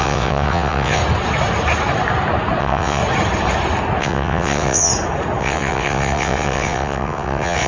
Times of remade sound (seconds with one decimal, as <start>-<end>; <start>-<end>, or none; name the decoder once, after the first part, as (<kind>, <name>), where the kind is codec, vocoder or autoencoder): 0.0-1.0 (vocoder, WaveNeXt); 2.6-3.0; 4.0-4.9; 5.4-7.7